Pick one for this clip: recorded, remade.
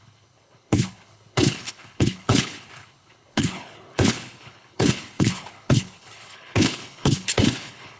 remade